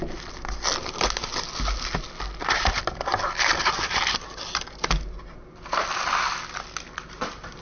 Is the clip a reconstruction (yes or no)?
no